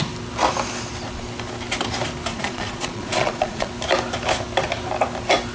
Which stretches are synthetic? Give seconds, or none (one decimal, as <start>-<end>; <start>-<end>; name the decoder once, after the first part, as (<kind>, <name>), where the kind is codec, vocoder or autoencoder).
2.3-3.7 (vocoder, Vocos)